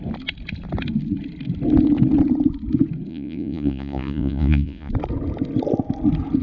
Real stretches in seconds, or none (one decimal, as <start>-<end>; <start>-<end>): 0.0-3.1; 4.9-6.4